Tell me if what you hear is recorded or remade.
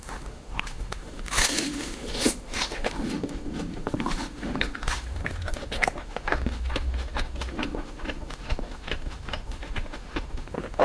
remade